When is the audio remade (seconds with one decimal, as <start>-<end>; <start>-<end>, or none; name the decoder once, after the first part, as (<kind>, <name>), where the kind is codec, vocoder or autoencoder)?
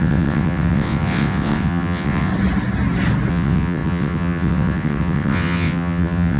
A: 0.0-2.3 (vocoder, WaveNeXt); 3.3-6.4